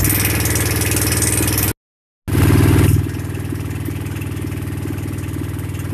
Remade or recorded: recorded